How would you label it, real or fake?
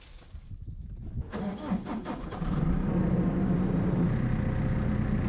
real